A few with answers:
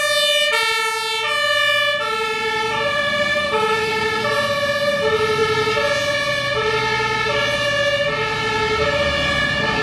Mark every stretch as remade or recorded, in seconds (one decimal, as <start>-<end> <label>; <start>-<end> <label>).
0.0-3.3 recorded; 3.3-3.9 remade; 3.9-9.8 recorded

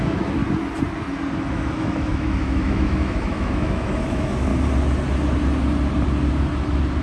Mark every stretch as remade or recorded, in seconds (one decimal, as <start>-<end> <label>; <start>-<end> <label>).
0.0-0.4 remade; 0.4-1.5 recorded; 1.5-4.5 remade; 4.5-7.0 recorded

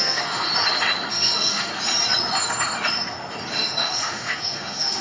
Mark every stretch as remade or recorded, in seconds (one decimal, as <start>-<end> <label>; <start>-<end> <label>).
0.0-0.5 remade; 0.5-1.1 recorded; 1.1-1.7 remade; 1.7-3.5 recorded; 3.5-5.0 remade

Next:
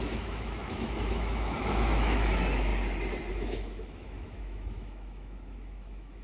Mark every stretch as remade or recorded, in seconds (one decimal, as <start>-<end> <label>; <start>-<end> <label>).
0.0-2.7 remade; 2.7-3.3 recorded; 3.3-6.2 remade

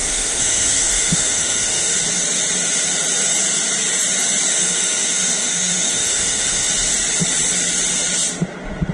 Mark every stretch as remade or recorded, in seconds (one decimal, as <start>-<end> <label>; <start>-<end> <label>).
0.0-2.0 remade; 2.0-4.5 recorded; 4.5-6.7 remade; 6.7-8.9 recorded

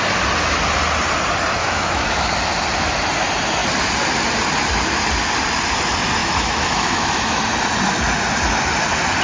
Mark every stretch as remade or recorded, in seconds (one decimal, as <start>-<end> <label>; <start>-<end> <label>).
0.0-1.6 recorded; 1.6-2.3 remade; 2.3-6.2 recorded; 6.2-7.4 remade; 7.4-9.2 recorded

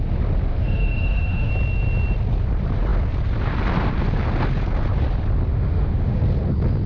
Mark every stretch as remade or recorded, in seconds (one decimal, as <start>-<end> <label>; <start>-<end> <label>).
0.0-0.5 recorded; 0.5-1.5 remade; 1.5-5.5 recorded; 5.5-6.2 remade; 6.2-6.9 recorded